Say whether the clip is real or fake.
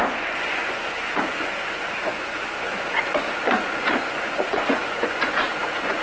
fake